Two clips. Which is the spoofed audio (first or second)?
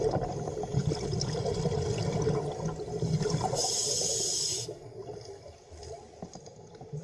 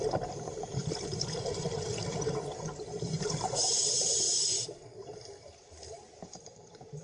second